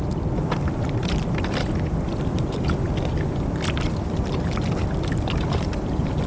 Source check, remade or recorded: remade